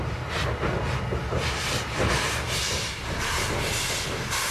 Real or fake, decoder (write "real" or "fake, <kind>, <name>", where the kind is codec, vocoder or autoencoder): real